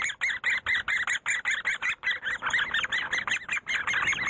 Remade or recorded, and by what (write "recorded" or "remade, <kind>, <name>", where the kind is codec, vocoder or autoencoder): recorded